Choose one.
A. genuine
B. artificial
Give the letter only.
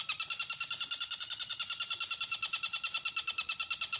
A